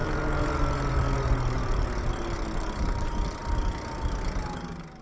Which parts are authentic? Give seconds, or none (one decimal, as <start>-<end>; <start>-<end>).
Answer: 0.0-5.0